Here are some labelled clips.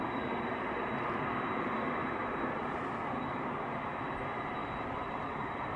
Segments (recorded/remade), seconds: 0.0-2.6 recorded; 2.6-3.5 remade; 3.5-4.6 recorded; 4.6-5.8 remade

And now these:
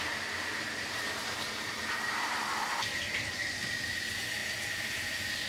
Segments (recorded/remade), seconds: 0.0-5.5 recorded

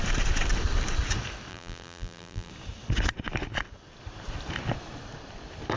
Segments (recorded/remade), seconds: 0.0-1.5 recorded; 1.5-2.5 remade; 2.5-5.8 recorded

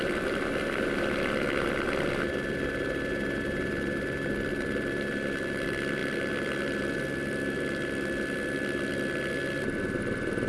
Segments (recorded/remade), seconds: 0.0-10.5 recorded

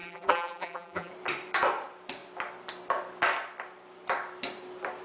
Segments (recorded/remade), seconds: 0.0-1.1 remade; 1.1-5.0 recorded